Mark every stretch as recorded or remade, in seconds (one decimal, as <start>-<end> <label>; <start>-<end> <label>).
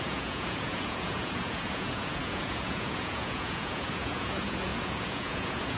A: 0.0-5.8 remade